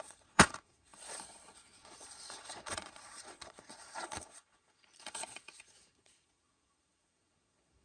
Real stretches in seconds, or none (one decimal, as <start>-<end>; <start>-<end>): none